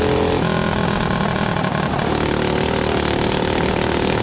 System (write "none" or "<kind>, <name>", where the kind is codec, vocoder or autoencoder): none